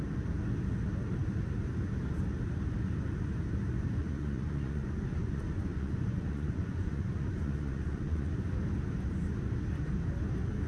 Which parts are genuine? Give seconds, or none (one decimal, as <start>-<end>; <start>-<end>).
0.0-4.0; 8.3-10.7